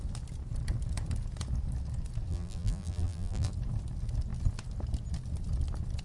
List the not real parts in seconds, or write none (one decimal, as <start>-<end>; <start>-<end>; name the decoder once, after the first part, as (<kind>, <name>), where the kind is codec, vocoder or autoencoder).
2.3-3.5 (vocoder, BigVGAN v2)